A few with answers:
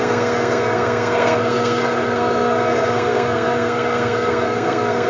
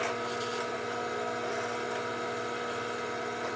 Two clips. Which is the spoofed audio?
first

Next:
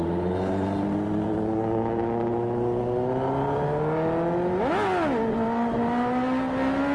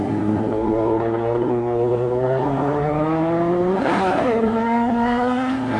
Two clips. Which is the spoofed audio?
second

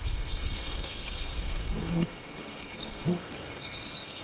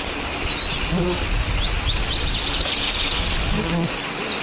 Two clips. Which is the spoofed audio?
first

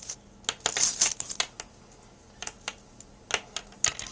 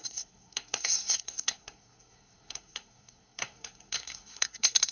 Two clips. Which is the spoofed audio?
second